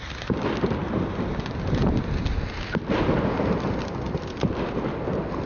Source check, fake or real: real